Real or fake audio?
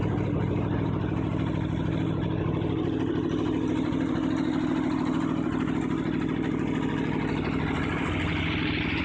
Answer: real